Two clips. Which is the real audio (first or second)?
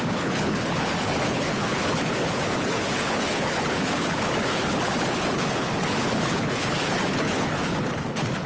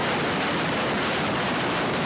second